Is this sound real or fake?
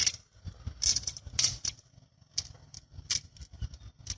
real